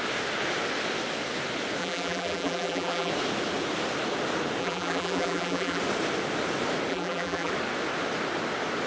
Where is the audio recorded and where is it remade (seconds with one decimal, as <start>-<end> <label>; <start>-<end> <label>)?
0.0-1.8 recorded; 1.8-3.1 remade; 3.1-4.6 recorded; 4.6-5.8 remade; 5.8-6.9 recorded; 6.9-7.5 remade; 7.5-8.9 recorded